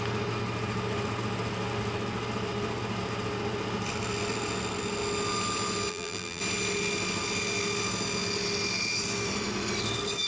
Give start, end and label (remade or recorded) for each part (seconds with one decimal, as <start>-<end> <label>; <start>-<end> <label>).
0.0-5.9 recorded; 5.9-6.4 remade; 6.4-10.3 recorded